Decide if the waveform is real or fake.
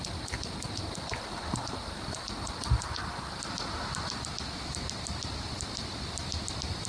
real